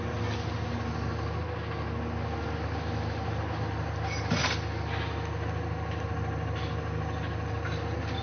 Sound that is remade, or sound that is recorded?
recorded